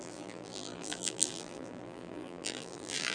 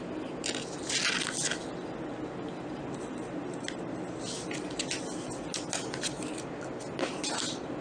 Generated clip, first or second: first